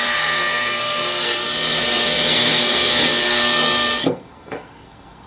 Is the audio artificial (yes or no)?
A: yes